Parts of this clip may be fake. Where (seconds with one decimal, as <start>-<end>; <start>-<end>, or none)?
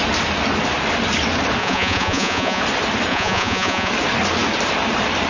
1.6-2.6; 3.1-3.9